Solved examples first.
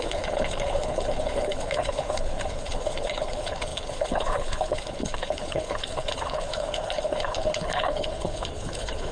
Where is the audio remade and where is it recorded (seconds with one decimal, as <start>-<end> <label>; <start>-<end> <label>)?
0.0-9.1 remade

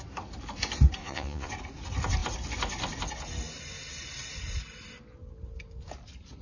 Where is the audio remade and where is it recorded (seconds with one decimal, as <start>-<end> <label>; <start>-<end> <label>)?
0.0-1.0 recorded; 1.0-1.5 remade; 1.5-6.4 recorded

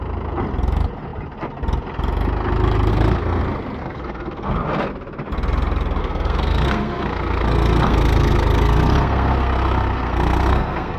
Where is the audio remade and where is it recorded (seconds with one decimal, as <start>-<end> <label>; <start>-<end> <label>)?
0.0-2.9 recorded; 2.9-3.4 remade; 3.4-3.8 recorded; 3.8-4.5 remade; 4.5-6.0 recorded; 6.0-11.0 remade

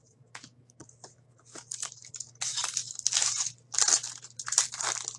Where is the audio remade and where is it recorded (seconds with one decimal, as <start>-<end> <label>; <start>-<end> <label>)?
0.0-3.1 remade; 3.1-5.2 recorded

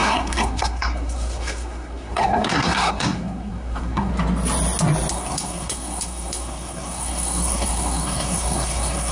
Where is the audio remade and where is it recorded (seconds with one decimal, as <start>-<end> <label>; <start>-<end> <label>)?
0.0-4.1 remade; 4.1-5.1 recorded; 5.1-9.1 remade

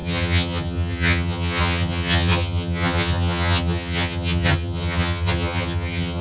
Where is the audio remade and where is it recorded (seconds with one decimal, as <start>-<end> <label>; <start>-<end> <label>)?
0.0-6.2 remade

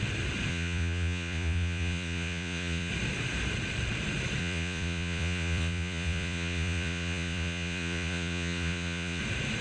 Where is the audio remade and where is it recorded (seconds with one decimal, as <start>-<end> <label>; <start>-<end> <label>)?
0.0-0.5 recorded; 0.5-2.9 remade; 2.9-4.4 recorded; 4.4-9.2 remade; 9.2-9.6 recorded